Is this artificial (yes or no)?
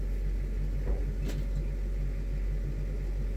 no